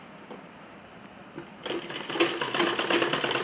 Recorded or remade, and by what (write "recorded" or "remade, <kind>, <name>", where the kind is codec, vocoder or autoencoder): recorded